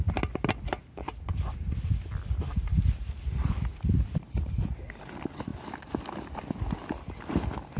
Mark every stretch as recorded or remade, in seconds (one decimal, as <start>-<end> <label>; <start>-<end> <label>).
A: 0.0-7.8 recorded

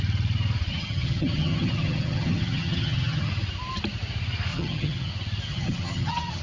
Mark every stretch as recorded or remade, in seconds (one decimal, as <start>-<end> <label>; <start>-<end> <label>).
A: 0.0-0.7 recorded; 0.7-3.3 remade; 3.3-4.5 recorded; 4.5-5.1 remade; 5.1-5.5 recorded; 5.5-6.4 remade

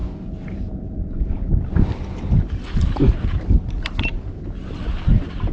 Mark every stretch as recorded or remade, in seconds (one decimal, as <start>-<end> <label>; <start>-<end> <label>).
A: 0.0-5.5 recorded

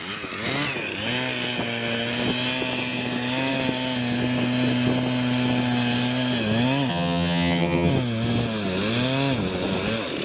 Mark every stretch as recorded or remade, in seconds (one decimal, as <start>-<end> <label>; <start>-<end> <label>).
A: 0.0-6.9 recorded; 6.9-7.9 remade; 7.9-10.2 recorded

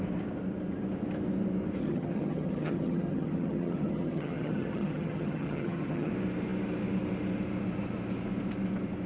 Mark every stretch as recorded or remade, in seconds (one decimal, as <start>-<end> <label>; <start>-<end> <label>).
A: 0.0-1.8 recorded; 1.8-6.1 remade; 6.1-9.1 recorded

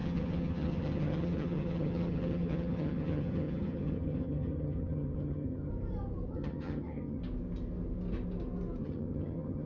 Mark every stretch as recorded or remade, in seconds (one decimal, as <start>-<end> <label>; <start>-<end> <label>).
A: 0.0-5.7 remade; 5.7-6.3 recorded; 6.3-7.2 remade; 7.2-8.8 recorded; 8.8-9.7 remade

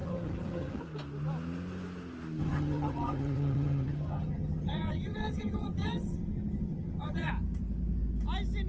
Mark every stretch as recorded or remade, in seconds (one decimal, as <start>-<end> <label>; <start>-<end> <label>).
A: 0.0-0.8 remade; 0.8-2.4 recorded; 2.4-7.3 remade; 7.3-8.7 recorded